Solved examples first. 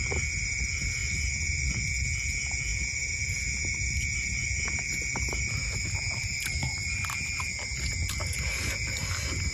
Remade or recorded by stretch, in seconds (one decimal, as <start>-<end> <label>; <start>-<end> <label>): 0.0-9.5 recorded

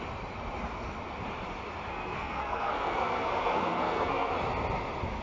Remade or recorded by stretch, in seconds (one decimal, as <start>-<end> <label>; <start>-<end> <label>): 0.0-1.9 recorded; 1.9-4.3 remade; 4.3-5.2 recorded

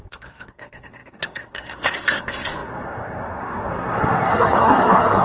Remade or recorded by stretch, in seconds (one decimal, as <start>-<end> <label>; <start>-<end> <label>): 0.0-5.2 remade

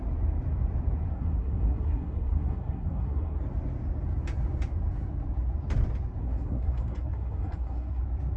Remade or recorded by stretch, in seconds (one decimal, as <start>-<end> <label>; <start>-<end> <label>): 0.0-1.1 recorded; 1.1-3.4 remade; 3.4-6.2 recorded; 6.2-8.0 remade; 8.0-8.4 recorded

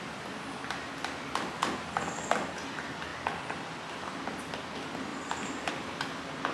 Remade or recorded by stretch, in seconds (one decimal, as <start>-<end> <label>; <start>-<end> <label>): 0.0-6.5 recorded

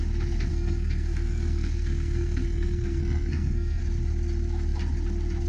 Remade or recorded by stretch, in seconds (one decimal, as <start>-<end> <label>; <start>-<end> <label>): 0.0-0.5 recorded; 0.5-3.8 remade; 3.8-5.5 recorded

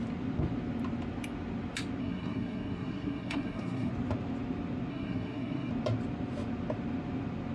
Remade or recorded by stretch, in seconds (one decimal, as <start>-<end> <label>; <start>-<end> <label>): 0.0-2.0 recorded; 2.0-3.9 remade; 3.9-4.9 recorded; 4.9-5.7 remade; 5.7-7.5 recorded